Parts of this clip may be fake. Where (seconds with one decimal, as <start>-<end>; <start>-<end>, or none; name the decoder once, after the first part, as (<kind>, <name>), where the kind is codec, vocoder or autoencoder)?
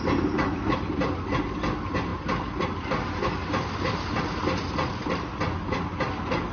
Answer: none